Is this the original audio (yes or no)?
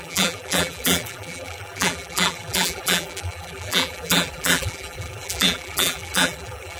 no